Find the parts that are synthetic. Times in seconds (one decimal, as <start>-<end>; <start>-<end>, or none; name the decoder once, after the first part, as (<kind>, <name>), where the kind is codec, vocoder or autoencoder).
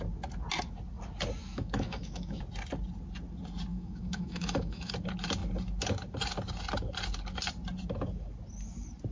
1.4-2.4 (autoencoder, DAC-VAE); 3.7-4.9